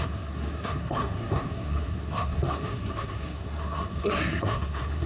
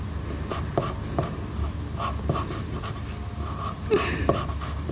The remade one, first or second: first